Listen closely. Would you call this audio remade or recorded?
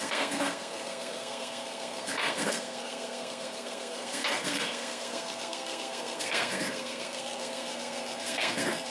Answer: remade